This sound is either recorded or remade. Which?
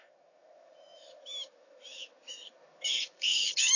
remade